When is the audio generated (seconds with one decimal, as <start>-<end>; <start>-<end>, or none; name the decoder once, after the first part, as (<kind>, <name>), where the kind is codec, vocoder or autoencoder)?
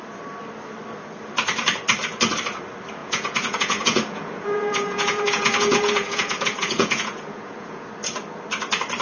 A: 3.0-7.9 (vocoder, Vocos)